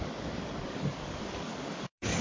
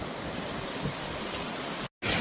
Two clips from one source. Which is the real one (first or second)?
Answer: second